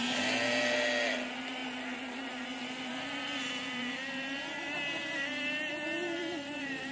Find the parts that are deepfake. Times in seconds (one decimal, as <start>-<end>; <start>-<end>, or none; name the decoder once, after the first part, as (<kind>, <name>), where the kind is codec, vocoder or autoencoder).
none